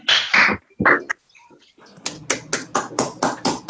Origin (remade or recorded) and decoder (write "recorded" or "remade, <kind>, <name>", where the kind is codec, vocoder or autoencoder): recorded